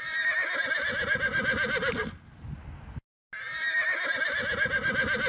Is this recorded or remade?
recorded